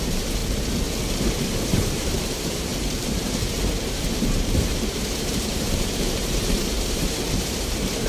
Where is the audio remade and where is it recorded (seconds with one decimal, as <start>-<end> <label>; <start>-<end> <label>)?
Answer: 0.0-0.4 remade; 0.4-1.1 recorded; 1.1-8.1 remade